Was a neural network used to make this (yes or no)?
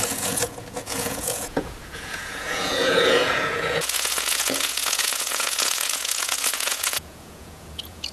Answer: yes